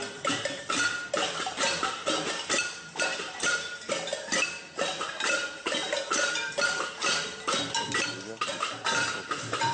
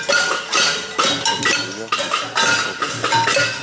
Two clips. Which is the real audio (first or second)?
second